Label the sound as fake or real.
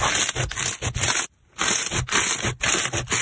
real